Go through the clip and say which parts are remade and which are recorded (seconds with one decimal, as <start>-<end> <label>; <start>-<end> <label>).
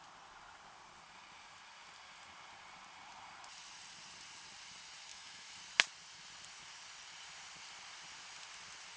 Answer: 0.0-5.1 recorded; 5.1-5.6 remade; 5.6-9.0 recorded